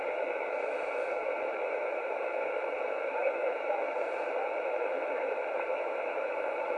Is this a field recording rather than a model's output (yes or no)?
no